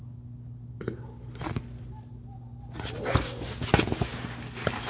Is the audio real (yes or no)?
yes